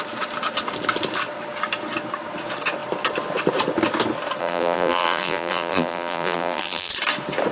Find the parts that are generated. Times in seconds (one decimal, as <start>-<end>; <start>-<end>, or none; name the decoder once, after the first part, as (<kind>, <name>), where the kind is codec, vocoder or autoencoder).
4.4-6.9 (vocoder, BigVGAN v2)